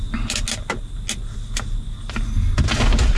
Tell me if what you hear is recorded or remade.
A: recorded